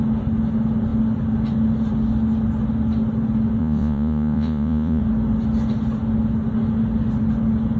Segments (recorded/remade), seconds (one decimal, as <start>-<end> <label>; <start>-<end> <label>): 0.0-3.6 recorded; 3.6-5.0 remade; 5.0-7.8 recorded